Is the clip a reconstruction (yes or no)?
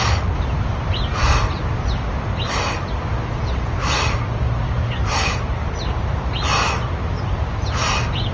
no